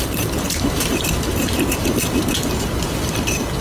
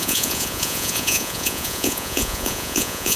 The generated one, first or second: second